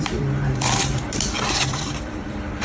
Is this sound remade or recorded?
remade